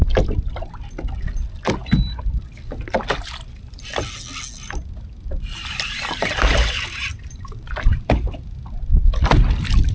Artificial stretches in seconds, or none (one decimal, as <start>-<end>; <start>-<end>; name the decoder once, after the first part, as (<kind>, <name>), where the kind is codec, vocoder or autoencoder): 7.1-8.1 (vocoder, BigVGAN v2)